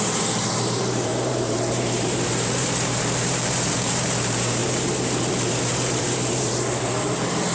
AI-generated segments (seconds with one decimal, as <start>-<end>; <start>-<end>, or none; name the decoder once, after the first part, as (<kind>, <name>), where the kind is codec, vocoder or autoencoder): 0.0-7.5 (vocoder, BigVGAN v2)